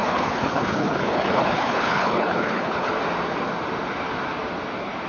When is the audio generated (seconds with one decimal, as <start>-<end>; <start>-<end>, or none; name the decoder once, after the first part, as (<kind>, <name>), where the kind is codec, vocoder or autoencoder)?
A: 0.0-2.9 (codec, HILCodec)